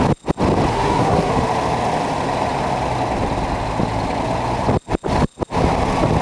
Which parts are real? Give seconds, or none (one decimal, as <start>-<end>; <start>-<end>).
0.0-0.7; 1.3-6.2